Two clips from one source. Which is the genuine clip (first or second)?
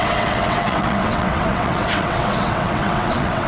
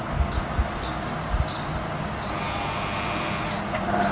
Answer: second